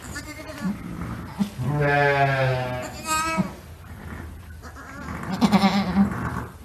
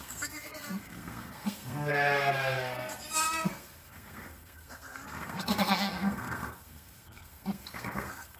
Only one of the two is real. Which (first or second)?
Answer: first